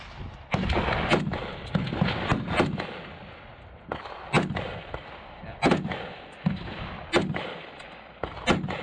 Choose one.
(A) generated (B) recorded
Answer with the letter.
B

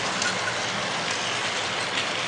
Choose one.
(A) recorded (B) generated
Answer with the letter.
A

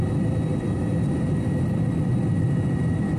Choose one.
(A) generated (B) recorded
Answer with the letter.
A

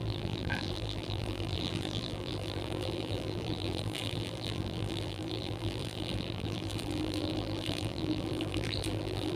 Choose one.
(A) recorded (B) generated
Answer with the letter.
B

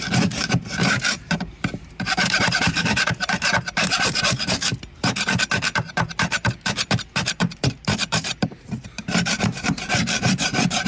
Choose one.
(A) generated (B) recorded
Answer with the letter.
A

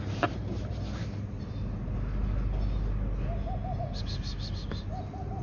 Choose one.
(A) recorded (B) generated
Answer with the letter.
A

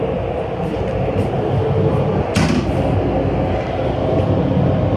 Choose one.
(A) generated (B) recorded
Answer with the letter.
B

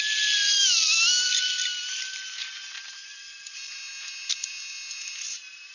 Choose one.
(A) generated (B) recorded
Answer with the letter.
B